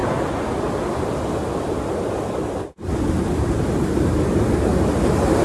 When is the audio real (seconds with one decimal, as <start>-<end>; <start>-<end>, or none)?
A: 0.0-3.2; 4.7-5.4